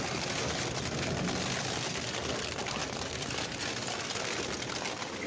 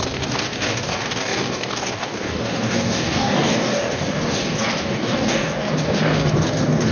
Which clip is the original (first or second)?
first